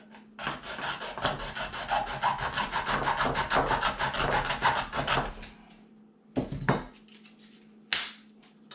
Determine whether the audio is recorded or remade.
recorded